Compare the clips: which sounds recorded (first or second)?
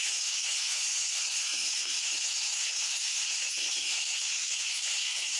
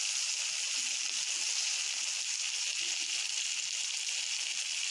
second